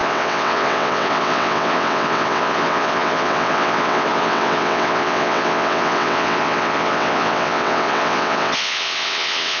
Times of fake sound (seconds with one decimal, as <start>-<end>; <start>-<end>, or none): 0.0-9.6